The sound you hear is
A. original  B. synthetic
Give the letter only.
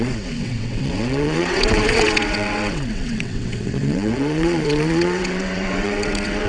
B